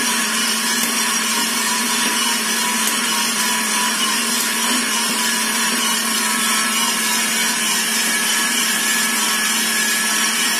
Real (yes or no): no